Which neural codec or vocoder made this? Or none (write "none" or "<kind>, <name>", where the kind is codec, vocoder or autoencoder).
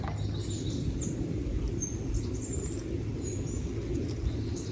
none